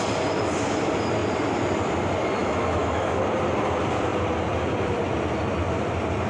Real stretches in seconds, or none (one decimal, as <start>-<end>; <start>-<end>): 0.0-2.4; 3.2-6.3